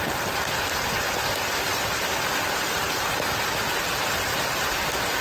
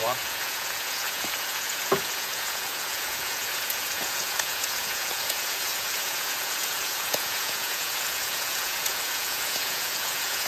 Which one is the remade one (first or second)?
second